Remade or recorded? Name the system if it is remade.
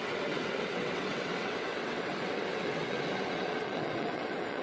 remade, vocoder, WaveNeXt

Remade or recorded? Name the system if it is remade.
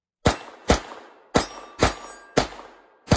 recorded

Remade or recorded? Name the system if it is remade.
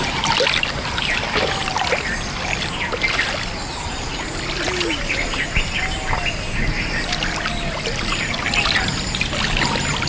recorded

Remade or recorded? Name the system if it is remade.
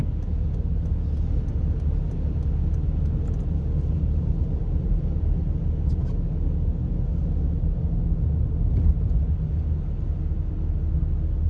recorded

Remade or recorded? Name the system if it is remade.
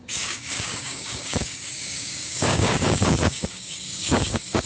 remade, codec, DAC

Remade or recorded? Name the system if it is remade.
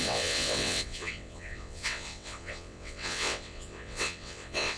remade, vocoder, WaveNeXt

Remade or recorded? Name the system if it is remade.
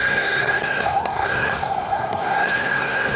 remade, codec, SNAC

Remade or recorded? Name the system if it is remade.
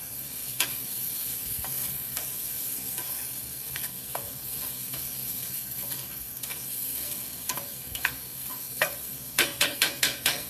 remade, codec, SNAC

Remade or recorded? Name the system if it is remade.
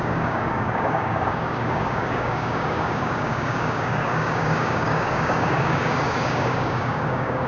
remade, codec, DAC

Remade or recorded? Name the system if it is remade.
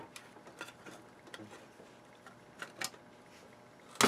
recorded